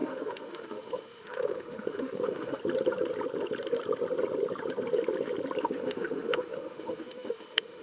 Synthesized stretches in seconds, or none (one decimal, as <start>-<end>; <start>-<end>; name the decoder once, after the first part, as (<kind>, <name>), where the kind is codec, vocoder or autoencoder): 0.0-2.6 (autoencoder, DAC-VAE); 5.6-7.8

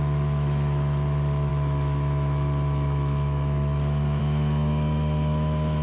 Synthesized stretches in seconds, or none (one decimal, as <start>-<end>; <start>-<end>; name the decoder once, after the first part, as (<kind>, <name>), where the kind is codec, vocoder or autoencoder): 0.0-5.8 (autoencoder, DAC-VAE)

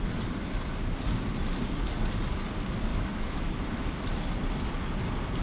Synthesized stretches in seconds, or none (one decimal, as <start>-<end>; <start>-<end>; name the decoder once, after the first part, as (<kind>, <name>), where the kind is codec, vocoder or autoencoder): 2.9-3.5 (autoencoder, DAC-VAE)